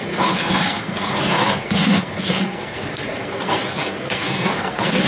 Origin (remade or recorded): remade